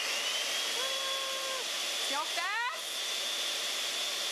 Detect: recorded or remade recorded